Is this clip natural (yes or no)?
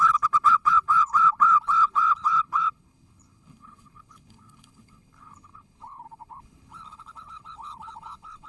no